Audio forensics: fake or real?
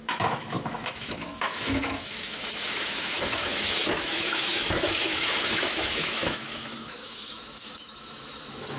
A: fake